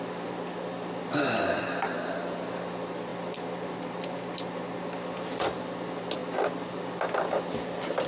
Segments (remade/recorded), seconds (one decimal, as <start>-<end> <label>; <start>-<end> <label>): 0.0-8.1 recorded